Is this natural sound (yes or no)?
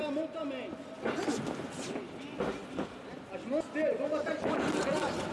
yes